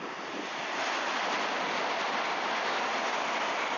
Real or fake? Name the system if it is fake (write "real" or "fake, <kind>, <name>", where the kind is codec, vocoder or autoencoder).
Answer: real